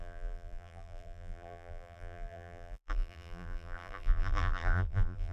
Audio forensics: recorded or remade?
remade